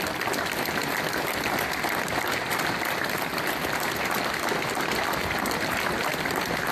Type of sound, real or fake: real